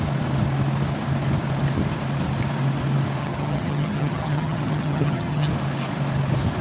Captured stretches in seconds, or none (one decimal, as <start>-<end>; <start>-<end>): 0.0-3.2; 5.5-6.6